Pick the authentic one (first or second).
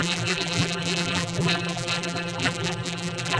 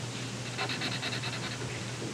second